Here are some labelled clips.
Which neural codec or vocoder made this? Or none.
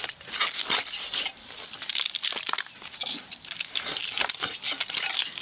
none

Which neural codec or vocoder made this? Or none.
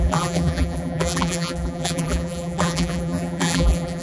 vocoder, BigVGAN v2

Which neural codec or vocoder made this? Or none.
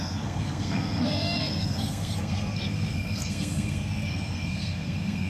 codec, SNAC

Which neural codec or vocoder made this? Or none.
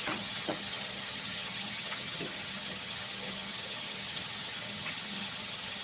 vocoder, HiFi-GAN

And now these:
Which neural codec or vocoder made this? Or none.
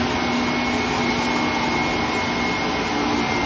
none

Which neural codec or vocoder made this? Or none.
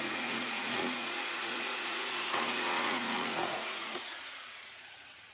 vocoder, Vocos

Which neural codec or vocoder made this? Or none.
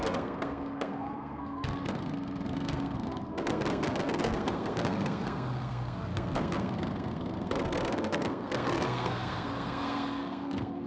codec, SNAC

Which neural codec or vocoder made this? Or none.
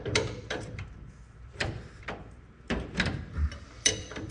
vocoder, BigVGAN v2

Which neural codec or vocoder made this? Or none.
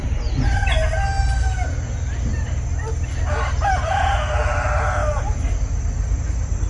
none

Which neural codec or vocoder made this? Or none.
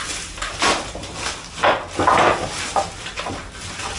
none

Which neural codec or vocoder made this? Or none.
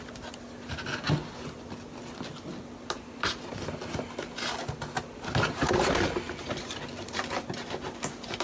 none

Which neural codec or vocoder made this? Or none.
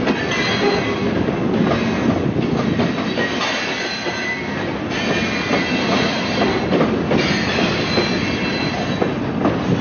none